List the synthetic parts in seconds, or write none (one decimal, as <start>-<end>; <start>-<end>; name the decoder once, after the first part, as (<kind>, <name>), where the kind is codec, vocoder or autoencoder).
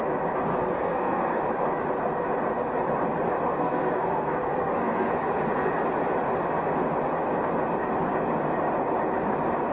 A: 0.5-1.4 (codec, SNAC); 3.5-5.1